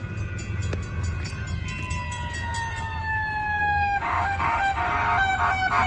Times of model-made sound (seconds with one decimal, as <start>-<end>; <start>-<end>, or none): 3.6-4.9